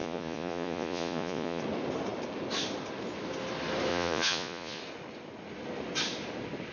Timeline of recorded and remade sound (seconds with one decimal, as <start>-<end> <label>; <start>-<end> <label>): 0.0-1.6 remade; 1.6-3.9 recorded; 3.9-4.8 remade; 4.8-6.7 recorded